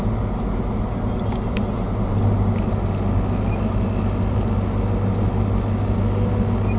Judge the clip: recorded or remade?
recorded